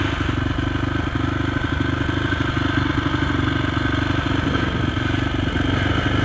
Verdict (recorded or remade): recorded